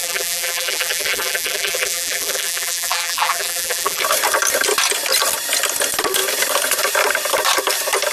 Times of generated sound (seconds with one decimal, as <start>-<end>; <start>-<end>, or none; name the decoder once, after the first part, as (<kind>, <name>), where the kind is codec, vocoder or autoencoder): 0.0-4.0 (vocoder, BigVGAN v2)